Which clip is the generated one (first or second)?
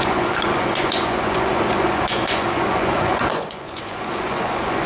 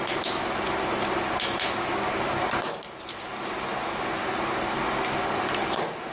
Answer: first